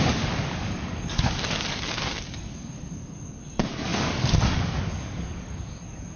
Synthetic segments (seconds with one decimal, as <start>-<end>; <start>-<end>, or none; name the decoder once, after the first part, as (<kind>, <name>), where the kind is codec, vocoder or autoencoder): 0.0-6.2 (codec, DAC)